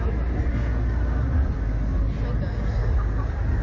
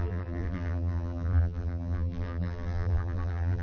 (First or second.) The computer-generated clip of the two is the second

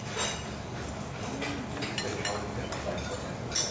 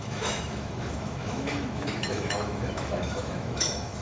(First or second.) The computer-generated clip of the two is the second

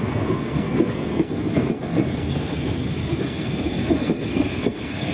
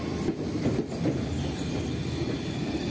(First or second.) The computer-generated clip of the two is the first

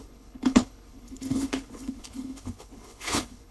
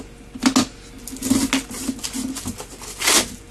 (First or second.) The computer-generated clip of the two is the first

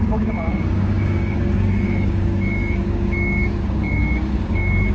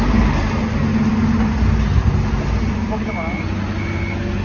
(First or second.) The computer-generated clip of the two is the first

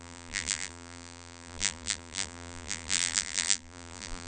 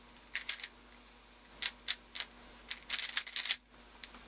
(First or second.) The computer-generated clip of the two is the first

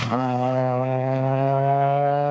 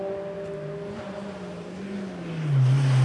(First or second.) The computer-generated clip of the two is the first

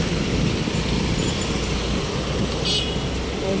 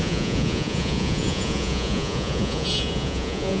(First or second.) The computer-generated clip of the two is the second